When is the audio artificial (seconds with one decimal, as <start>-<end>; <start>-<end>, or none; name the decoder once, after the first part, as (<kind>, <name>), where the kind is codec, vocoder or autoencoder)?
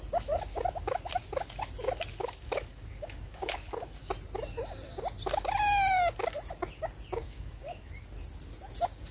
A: 2.1-4.0 (codec, DAC); 7.2-7.9